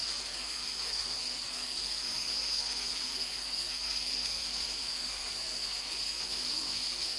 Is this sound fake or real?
fake